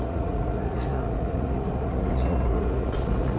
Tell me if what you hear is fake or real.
fake